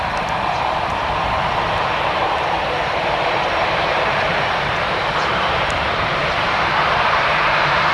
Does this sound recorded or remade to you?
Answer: remade